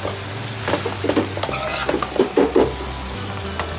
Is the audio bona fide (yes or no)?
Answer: yes